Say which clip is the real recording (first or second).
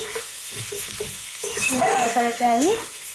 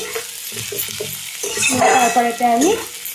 second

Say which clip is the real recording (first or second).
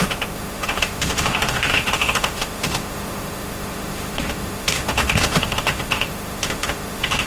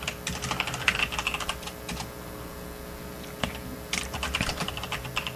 second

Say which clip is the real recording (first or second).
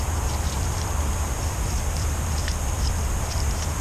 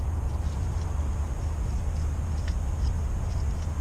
second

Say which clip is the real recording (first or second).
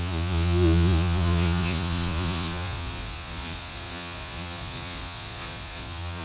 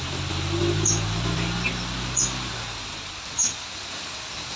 second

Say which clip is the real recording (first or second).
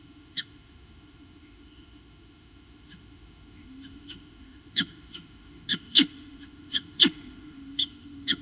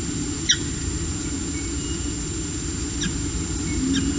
second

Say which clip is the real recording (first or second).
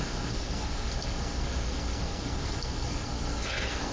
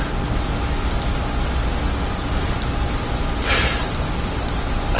second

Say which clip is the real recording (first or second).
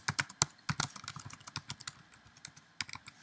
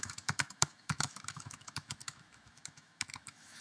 first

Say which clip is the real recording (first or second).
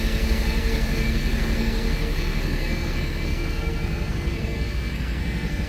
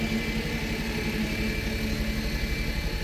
second